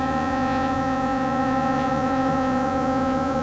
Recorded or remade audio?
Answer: remade